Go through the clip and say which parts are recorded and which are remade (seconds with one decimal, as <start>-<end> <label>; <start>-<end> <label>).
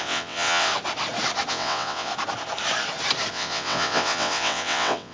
0.0-0.7 remade; 0.7-1.5 recorded; 1.5-2.1 remade; 2.1-3.3 recorded; 3.3-5.1 remade